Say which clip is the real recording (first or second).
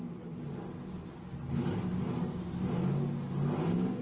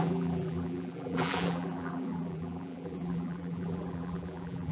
first